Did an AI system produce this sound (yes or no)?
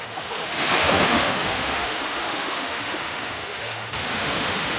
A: yes